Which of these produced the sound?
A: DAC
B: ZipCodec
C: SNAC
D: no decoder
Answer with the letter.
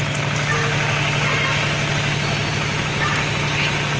D